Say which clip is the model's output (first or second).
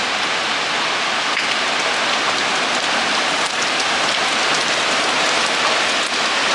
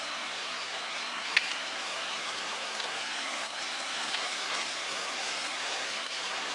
second